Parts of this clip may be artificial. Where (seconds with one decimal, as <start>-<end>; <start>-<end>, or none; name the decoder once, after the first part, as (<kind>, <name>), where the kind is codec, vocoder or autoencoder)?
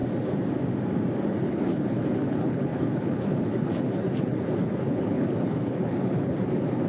1.4-6.9 (codec, HILCodec)